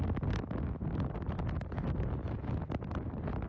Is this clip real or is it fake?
real